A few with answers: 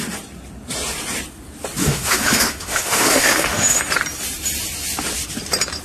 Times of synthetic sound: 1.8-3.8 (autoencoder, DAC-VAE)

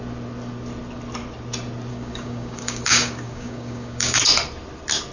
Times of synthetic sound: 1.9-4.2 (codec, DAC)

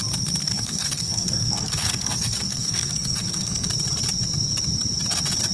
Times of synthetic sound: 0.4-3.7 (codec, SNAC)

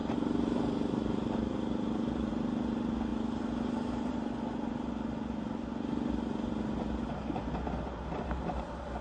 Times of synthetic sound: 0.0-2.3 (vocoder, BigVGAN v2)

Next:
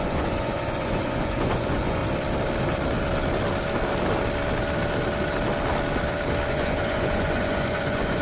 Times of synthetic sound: 0.0-2.0 (vocoder, Vocos); 6.5-8.2

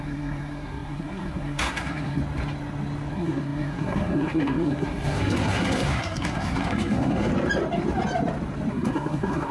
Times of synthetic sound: 0.0-2.2 (codec, SNAC); 3.1-7.3; 8.7-9.5